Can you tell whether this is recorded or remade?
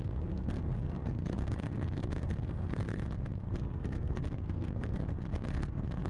remade